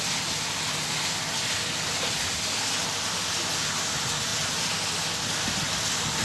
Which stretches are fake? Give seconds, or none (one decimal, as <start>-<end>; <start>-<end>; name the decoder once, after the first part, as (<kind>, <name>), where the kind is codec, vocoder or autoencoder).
none